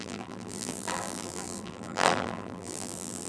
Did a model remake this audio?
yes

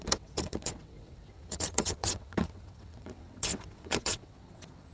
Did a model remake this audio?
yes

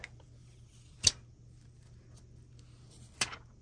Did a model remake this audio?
no